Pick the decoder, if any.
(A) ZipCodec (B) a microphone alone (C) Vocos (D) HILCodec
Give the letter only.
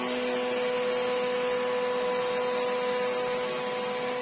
B